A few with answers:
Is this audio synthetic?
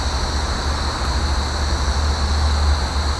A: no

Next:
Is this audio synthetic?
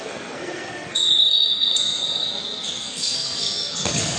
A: yes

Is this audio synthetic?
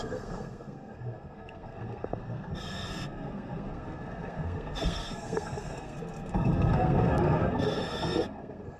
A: yes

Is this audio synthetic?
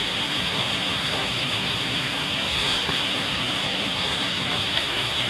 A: yes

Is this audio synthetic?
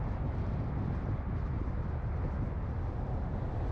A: no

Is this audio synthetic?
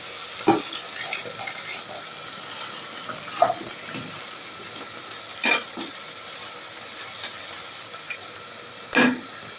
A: no